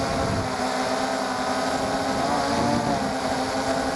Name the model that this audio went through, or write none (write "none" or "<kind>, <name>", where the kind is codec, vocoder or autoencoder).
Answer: none